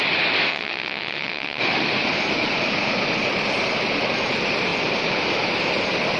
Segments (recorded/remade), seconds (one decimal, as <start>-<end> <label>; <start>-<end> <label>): 0.0-0.5 recorded; 0.5-1.6 remade; 1.6-6.2 recorded